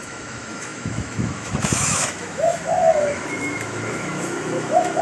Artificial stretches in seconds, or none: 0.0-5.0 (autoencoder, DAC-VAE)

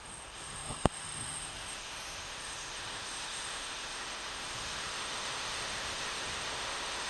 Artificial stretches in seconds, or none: 0.0-7.1 (autoencoder, DAC-VAE)

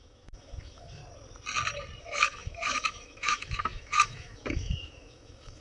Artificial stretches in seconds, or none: 0.0-1.0 (autoencoder, DAC-VAE); 2.0-5.6